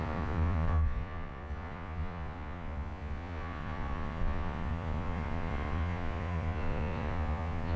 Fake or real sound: fake